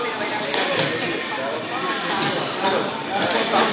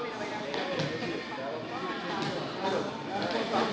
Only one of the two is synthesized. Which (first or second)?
first